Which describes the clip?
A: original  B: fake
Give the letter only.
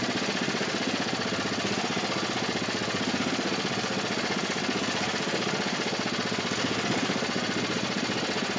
A